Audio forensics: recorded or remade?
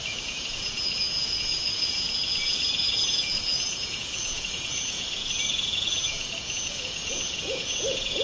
remade